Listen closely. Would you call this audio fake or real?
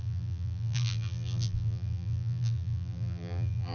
fake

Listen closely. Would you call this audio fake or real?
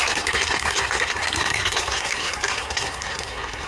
fake